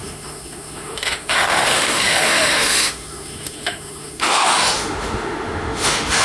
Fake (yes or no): yes